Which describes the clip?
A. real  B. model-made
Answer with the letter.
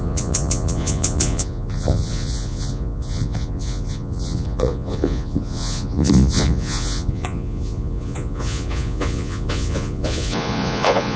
B